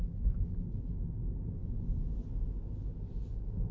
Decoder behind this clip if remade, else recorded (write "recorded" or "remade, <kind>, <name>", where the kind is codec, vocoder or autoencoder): recorded